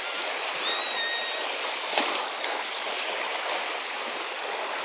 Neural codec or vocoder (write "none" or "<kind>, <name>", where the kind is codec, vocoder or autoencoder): none